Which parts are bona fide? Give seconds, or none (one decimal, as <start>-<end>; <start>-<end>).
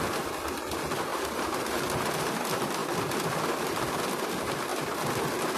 0.0-1.1; 2.2-5.6